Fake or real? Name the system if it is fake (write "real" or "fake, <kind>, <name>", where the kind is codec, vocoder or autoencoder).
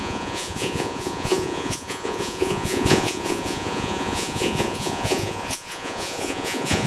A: fake, vocoder, Vocos